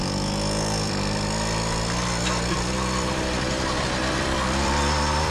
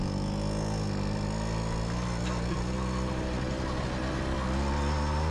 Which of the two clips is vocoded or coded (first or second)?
first